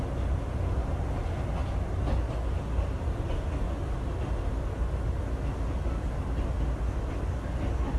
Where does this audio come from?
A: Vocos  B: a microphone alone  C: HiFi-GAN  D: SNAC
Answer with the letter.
B